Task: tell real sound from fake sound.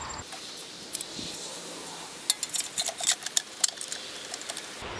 real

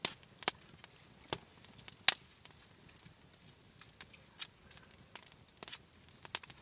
real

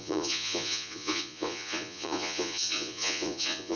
fake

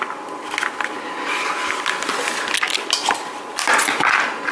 real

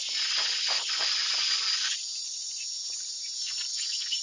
real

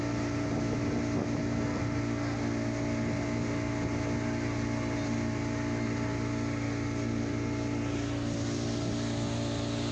real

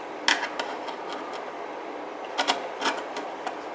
real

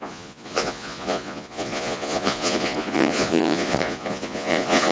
fake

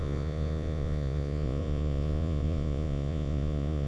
fake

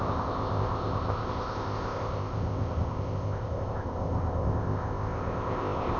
fake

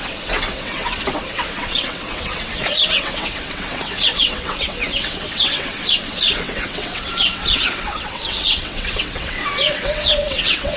fake